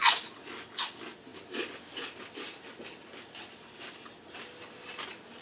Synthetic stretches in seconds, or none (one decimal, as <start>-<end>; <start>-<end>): none